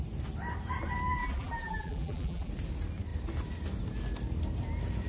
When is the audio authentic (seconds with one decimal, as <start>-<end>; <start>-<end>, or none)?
0.0-1.2; 2.5-5.1